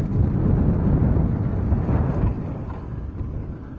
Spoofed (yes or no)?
no